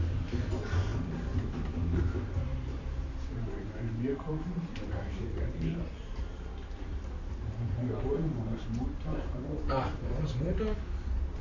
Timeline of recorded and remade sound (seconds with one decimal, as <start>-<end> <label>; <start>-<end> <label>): 0.0-11.4 remade